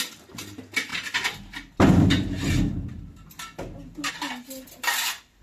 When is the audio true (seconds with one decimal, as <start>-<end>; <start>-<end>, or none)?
0.0-5.4